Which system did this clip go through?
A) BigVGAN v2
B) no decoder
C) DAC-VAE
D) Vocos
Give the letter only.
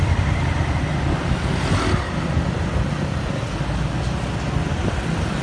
B